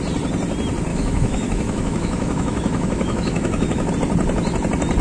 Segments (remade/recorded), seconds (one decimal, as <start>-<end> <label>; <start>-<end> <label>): 0.0-0.9 recorded; 0.9-3.9 remade; 3.9-5.0 recorded